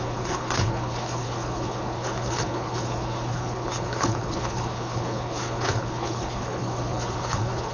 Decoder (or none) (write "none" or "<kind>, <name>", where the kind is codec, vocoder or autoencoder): codec, HILCodec